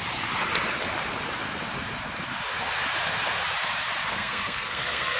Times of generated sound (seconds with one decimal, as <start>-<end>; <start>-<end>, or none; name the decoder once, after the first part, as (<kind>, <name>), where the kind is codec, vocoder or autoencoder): 4.1-5.2 (codec, SNAC)